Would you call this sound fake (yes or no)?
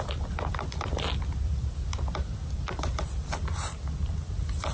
no